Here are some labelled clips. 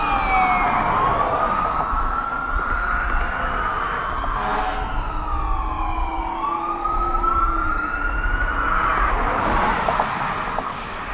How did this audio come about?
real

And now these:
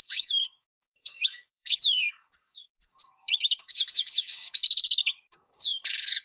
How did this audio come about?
fake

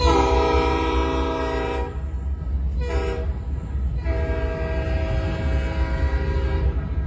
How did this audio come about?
real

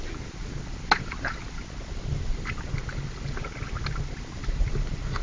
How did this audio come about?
real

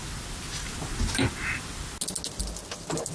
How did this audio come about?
real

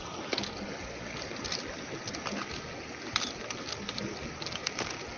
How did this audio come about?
real